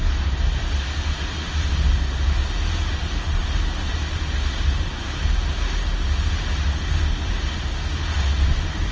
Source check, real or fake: real